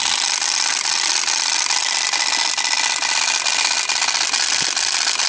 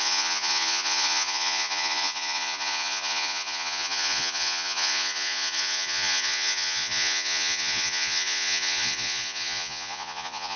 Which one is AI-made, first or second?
second